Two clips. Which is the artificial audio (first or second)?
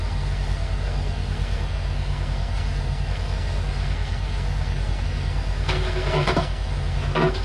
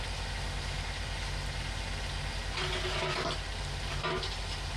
first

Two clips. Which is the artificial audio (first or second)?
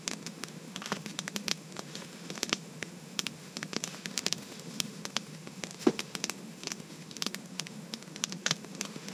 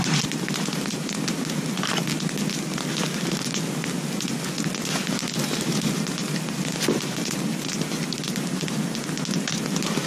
first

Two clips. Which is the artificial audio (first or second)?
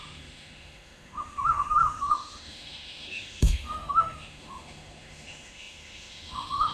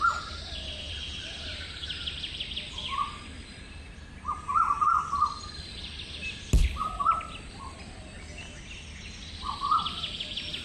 first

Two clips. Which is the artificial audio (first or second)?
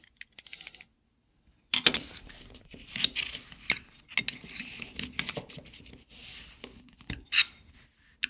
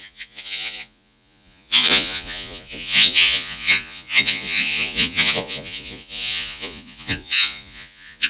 second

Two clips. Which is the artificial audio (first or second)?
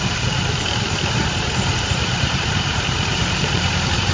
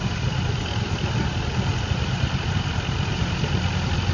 first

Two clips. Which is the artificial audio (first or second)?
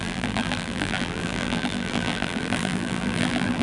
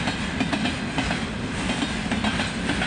first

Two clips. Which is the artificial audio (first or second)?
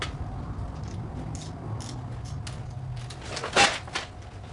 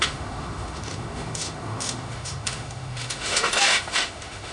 second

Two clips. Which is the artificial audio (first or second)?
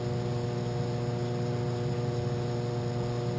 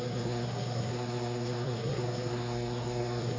second